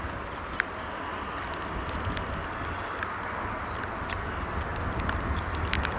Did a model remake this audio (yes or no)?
no